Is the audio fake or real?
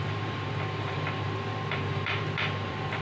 fake